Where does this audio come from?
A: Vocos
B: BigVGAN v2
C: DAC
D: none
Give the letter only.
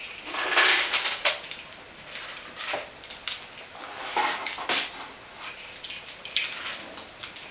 D